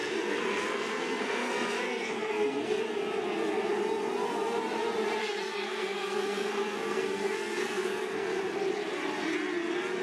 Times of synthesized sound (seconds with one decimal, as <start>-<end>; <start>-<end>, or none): 0.0-2.8; 5.2-8.4